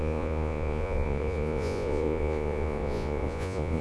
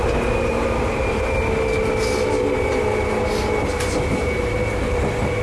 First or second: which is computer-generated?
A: first